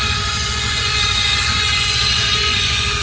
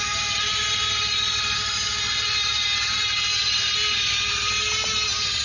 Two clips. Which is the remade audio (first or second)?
first